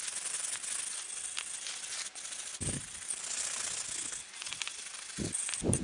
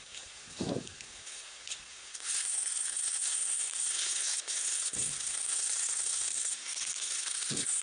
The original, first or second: first